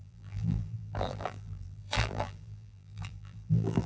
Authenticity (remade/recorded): remade